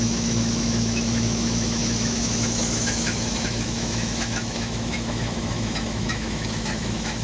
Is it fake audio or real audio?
fake